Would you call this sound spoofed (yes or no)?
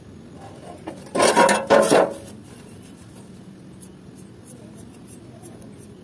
no